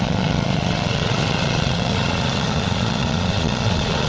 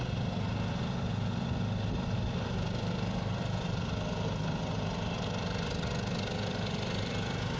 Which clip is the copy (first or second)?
first